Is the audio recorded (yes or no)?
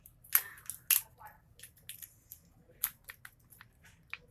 yes